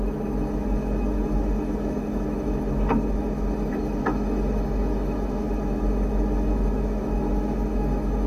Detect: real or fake fake